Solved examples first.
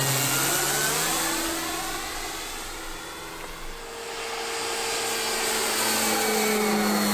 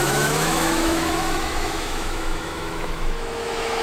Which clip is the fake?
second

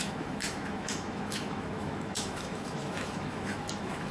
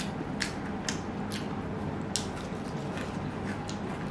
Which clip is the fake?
first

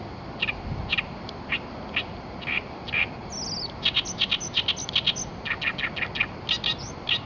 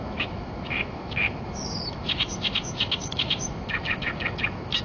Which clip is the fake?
second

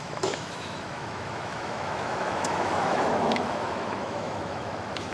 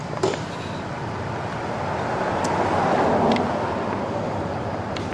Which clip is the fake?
first